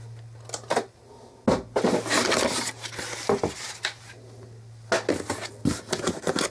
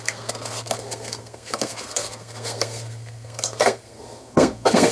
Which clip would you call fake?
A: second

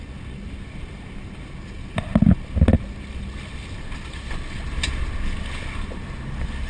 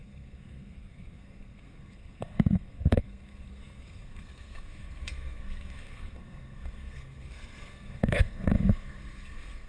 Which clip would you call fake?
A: second